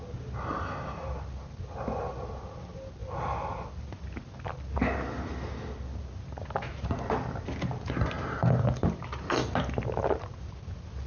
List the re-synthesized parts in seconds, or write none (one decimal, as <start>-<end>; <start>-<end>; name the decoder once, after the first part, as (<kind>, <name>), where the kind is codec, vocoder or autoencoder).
none